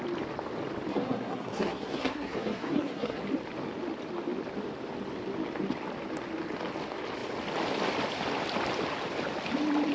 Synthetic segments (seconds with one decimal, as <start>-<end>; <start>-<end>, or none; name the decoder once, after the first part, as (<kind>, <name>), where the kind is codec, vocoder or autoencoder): 0.9-3.2 (codec, SNAC)